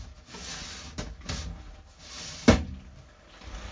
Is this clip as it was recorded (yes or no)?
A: yes